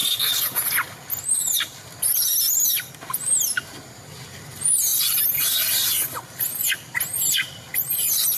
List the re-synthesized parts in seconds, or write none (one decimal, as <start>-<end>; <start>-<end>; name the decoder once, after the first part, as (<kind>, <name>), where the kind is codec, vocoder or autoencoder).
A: 0.0-2.9 (vocoder, BigVGAN v2); 4.9-8.4